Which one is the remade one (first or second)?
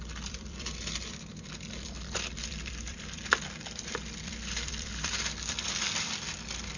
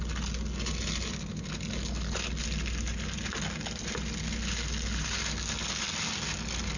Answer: first